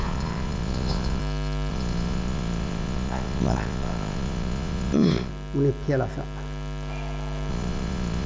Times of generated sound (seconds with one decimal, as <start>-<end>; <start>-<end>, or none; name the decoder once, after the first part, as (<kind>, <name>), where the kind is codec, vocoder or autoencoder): 0.0-1.2 (vocoder, Vocos); 1.7-5.3; 7.5-8.3